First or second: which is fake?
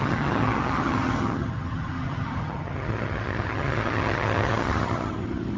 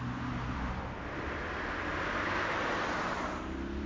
first